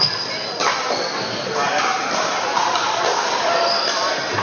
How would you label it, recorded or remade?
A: remade